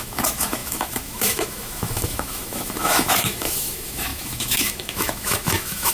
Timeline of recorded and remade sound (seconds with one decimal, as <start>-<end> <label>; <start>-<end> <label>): 0.0-5.9 remade